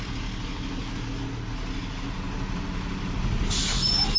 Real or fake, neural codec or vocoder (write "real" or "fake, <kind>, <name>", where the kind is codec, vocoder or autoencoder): real